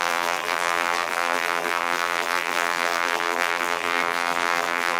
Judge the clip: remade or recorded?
remade